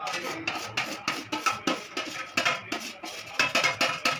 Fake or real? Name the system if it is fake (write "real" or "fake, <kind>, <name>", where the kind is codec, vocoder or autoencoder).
real